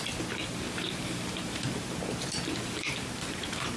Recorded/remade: remade